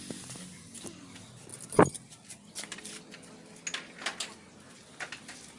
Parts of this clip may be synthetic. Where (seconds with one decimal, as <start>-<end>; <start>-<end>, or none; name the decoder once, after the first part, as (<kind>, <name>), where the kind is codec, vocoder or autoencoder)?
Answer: none